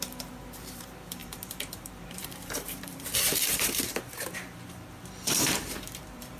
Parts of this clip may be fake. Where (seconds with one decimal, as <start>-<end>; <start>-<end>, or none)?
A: 0.0-6.4